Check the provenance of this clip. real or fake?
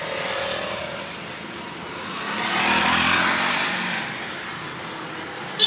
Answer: real